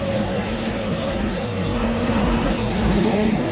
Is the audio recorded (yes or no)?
no